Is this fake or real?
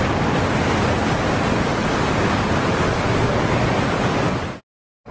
real